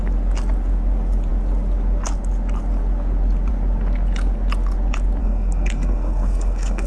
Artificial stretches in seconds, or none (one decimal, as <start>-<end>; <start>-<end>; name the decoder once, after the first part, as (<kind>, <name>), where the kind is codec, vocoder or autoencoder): 5.2-6.9 (codec, SNAC)

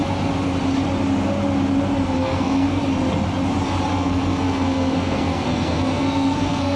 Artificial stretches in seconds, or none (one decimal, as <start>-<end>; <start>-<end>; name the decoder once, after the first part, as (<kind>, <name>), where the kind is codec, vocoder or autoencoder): 2.2-2.8 (codec, SNAC); 3.9-6.8

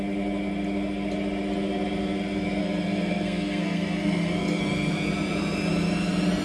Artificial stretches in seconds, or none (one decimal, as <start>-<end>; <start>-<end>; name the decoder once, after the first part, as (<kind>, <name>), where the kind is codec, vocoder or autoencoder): 2.6-4.6 (codec, SNAC)

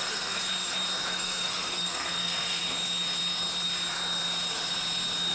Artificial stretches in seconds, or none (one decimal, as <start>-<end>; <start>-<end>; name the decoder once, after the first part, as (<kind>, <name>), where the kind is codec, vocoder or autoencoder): 0.0-0.4 (codec, SNAC); 1.1-2.6

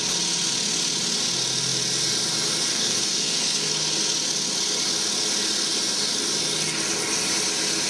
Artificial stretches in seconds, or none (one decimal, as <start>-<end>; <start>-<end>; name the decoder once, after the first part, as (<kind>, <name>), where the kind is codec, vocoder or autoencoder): 2.7-3.7 (codec, SNAC)

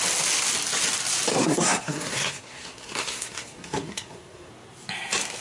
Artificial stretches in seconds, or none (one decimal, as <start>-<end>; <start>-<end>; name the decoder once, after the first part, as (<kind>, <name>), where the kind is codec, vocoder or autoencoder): 1.3-4.5 (codec, SNAC)

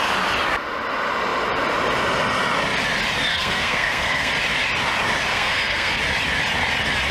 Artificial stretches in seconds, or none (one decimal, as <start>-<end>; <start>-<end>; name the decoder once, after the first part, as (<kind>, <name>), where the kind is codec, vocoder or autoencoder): 3.3-4.3 (codec, SNAC); 5.3-6.0

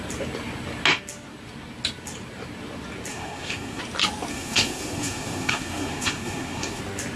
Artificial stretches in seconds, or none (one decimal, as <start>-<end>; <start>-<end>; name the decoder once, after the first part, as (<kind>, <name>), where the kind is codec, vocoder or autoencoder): 3.1-3.8 (codec, SNAC); 4.3-6.8